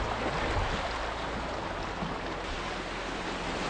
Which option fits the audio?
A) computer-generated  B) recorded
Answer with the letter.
B